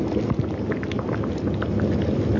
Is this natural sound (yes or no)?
yes